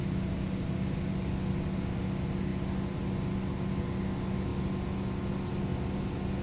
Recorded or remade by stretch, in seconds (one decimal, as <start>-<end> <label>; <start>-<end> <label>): 0.0-6.4 recorded